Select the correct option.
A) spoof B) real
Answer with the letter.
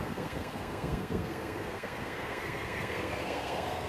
A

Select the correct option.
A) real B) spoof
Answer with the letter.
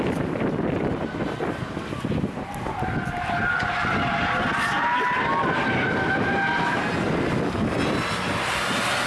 A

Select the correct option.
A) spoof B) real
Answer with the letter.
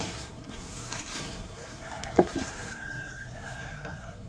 A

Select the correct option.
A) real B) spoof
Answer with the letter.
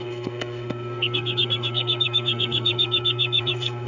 B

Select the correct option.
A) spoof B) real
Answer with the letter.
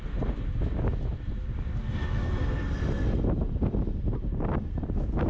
B